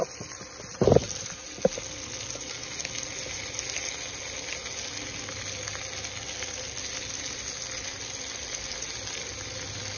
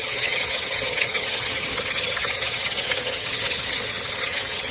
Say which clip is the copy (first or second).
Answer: second